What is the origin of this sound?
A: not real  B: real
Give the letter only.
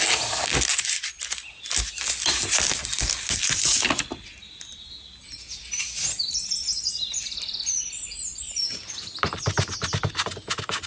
B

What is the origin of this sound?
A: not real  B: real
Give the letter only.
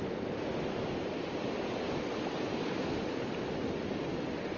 B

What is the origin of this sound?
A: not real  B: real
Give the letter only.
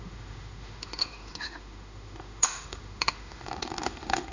A